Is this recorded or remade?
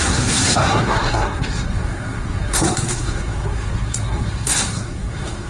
remade